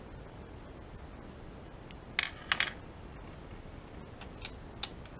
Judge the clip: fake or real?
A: real